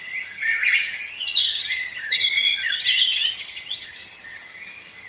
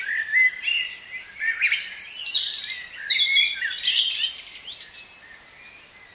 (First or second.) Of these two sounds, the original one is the second